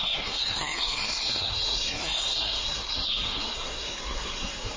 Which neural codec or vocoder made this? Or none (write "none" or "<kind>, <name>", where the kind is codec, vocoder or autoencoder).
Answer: codec, SNAC